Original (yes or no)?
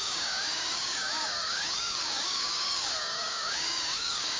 no